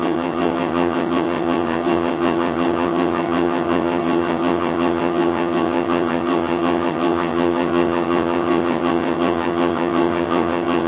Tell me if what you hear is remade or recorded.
remade